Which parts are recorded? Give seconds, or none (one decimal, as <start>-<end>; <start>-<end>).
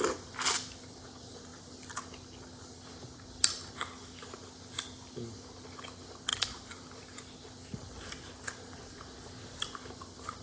0.0-10.4